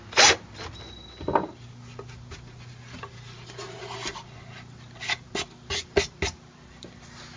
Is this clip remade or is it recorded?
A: recorded